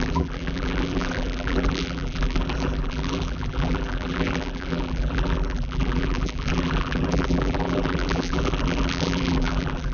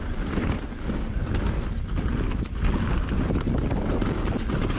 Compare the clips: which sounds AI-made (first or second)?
first